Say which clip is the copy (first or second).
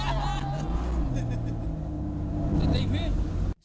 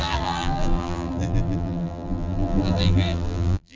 second